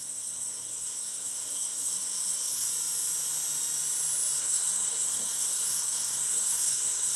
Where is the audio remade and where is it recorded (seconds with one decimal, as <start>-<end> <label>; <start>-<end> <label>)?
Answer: 0.0-2.7 remade; 2.7-4.4 recorded; 4.4-7.2 remade